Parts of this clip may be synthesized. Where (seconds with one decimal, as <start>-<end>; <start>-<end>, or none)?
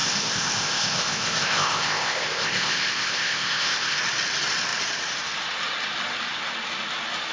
0.0-4.0